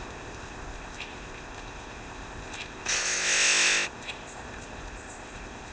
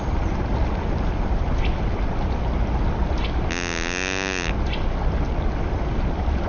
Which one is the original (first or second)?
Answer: second